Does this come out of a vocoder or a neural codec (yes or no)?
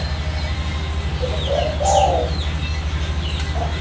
no